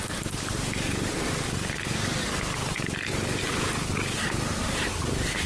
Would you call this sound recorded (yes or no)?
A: yes